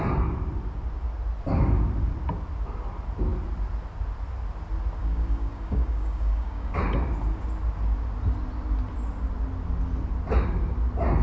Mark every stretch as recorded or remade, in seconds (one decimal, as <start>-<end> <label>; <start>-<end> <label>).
0.0-5.0 recorded; 5.0-6.8 remade; 6.8-11.2 recorded